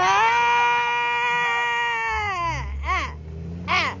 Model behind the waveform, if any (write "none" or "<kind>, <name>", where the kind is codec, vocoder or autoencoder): none